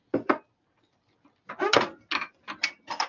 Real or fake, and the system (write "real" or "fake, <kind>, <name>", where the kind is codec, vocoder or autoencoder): real